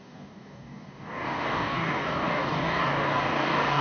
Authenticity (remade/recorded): remade